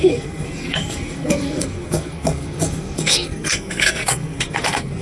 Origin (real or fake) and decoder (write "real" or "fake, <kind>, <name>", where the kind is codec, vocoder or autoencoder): fake, codec, SNAC